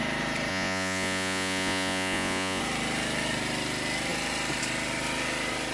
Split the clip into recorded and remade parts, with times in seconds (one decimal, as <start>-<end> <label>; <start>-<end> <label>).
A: 0.0-0.5 recorded; 0.5-2.6 remade; 2.6-5.7 recorded